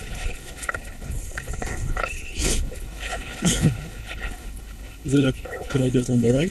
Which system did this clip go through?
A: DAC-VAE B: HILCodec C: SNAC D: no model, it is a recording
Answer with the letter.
B